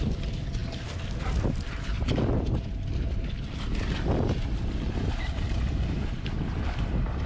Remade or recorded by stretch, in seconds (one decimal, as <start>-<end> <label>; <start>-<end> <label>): 0.0-7.3 remade